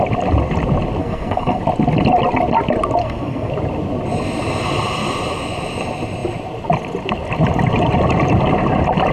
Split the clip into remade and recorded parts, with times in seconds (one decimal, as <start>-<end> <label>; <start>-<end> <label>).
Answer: 0.0-1.0 recorded; 1.0-1.6 remade; 1.6-3.0 recorded; 3.0-3.5 remade; 3.5-9.1 recorded